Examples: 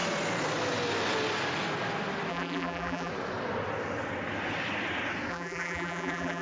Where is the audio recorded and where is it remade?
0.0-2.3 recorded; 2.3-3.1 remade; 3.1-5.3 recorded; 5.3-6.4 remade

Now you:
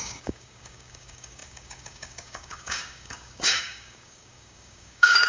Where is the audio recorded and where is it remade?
0.0-5.3 remade

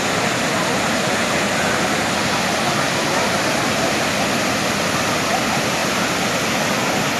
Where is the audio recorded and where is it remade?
0.0-7.2 recorded

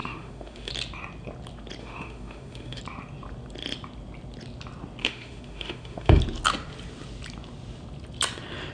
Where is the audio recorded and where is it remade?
0.0-0.7 remade; 0.7-1.8 recorded; 1.8-2.8 remade; 2.8-5.0 recorded; 5.0-6.2 remade; 6.2-8.7 recorded

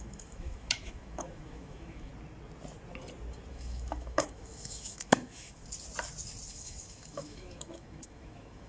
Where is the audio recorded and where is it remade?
0.0-2.1 remade; 2.1-3.5 recorded; 3.5-5.6 remade; 5.6-6.5 recorded; 6.5-8.7 remade

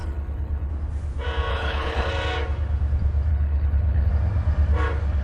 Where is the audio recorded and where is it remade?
0.0-0.7 remade; 0.7-1.5 recorded; 1.5-2.1 remade; 2.1-3.3 recorded; 3.3-4.1 remade; 4.1-5.2 recorded

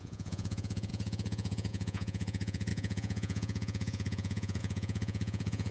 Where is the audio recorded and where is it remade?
0.0-5.7 remade

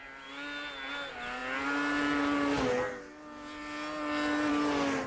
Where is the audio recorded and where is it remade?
0.0-5.1 recorded